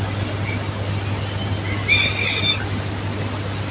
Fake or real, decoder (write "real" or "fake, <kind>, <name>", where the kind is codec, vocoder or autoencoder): real